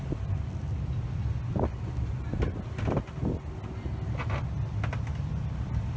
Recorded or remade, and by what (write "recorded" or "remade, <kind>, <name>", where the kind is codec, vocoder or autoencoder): recorded